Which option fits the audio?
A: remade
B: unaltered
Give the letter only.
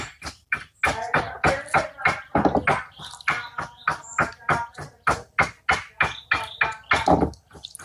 B